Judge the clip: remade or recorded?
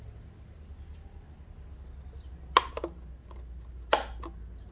recorded